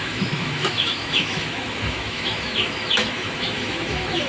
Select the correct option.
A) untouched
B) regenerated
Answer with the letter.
B